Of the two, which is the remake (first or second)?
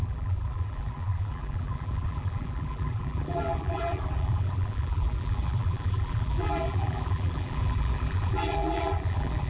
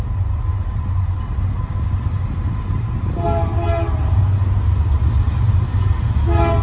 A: first